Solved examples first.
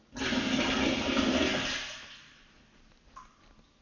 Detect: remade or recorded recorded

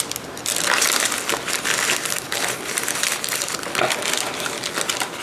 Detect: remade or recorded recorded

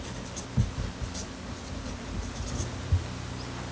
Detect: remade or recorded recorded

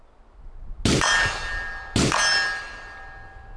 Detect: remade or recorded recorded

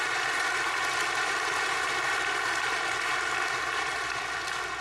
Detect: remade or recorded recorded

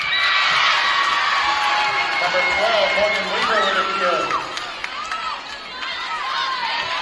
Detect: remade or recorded recorded